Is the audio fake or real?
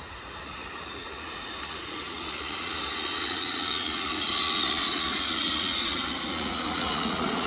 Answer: fake